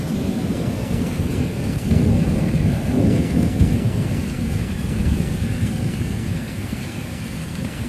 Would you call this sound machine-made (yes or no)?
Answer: yes